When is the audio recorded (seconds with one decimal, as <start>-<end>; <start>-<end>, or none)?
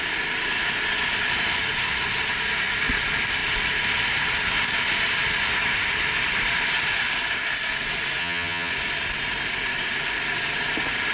0.0-8.2; 8.7-11.1